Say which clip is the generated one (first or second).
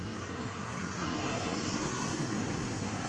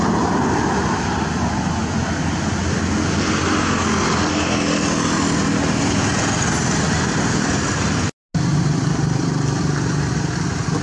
first